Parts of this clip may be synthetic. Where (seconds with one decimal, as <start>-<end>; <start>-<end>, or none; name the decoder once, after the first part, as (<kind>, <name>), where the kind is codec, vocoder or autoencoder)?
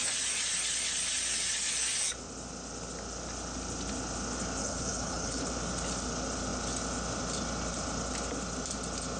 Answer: 4.6-5.5 (codec, HILCodec)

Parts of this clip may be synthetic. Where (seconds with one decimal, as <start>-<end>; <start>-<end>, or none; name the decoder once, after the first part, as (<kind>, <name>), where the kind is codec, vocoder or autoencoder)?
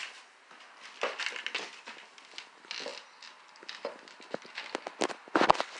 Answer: none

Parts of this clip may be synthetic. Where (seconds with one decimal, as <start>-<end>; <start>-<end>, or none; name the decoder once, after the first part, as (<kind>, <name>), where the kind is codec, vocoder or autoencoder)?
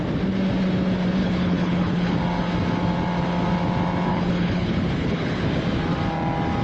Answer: 1.2-2.2 (codec, HILCodec); 4.1-5.4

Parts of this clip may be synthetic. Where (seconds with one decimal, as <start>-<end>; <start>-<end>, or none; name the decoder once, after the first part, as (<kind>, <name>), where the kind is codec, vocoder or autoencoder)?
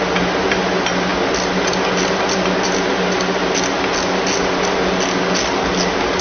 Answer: none